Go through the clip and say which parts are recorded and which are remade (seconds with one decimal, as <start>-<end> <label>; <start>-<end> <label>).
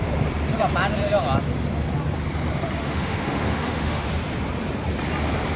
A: 0.0-2.8 recorded; 2.8-4.1 remade; 4.1-5.6 recorded